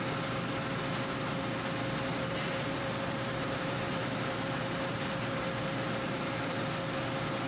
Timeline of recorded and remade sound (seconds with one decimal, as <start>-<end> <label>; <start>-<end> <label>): 0.0-2.1 recorded; 2.1-6.6 remade; 6.6-7.5 recorded